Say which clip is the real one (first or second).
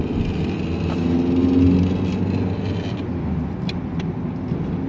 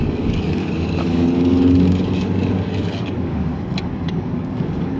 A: first